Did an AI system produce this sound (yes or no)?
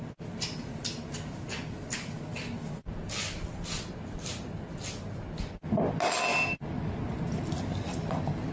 no